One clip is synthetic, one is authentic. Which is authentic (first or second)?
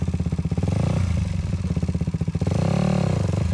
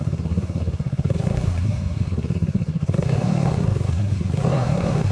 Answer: first